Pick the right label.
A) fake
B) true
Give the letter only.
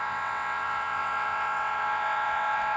A